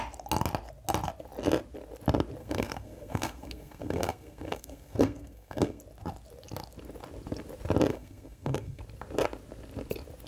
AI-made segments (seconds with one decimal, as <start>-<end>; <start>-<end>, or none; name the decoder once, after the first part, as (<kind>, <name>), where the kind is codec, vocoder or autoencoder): 2.4-5.8 (codec, SNAC); 7.9-8.8